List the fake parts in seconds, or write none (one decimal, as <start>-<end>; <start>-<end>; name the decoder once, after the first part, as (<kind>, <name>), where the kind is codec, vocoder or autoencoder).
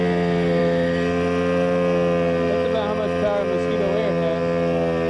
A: none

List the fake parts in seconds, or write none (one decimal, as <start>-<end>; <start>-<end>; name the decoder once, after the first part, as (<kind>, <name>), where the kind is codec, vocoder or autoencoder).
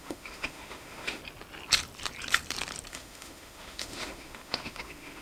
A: 0.0-1.2 (autoencoder, DAC-VAE); 2.9-5.2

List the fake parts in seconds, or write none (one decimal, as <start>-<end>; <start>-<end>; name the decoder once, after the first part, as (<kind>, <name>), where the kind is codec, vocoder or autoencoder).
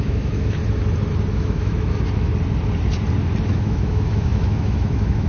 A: 0.0-0.6 (autoencoder, DAC-VAE); 1.3-2.3; 3.5-5.3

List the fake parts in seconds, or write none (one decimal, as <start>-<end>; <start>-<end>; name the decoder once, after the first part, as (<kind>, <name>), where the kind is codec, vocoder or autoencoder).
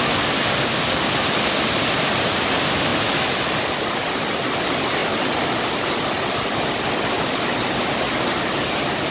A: none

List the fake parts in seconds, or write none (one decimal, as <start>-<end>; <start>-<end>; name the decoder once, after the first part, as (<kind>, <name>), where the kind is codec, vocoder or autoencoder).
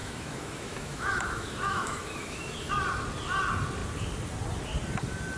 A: 0.0-2.7 (autoencoder, DAC-VAE)